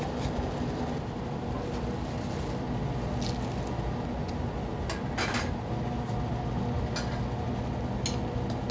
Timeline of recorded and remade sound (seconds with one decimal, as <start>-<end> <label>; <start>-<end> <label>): 0.0-8.7 recorded